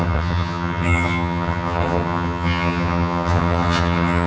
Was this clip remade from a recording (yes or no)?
yes